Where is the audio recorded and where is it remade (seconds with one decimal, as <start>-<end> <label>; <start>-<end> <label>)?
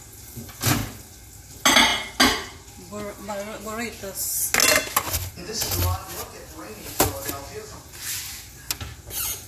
0.0-9.5 recorded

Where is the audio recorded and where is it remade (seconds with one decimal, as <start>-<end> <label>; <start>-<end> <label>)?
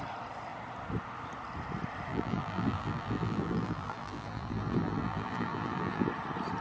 0.0-2.1 recorded; 2.1-6.1 remade; 6.1-6.6 recorded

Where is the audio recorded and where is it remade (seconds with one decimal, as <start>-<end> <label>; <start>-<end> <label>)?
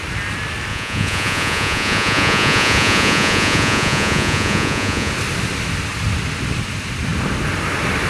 0.0-0.7 recorded; 0.7-5.1 remade; 5.1-8.1 recorded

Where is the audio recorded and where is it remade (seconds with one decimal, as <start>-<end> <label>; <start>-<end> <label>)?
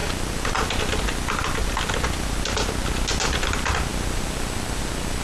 0.0-5.2 recorded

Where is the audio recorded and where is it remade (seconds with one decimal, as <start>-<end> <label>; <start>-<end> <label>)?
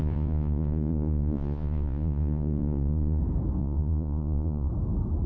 0.0-3.2 remade; 3.2-3.6 recorded; 3.6-4.7 remade; 4.7-5.3 recorded